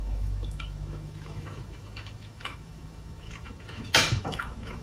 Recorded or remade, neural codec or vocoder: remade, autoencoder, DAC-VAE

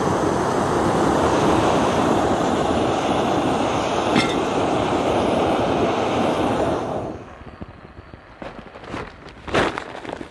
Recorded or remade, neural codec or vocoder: recorded